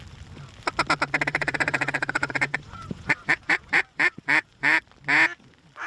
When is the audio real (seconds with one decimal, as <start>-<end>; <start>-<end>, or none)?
0.0-1.3; 4.8-5.9